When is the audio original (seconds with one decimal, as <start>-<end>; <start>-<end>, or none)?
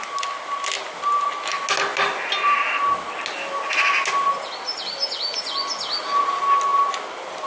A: 0.0-7.5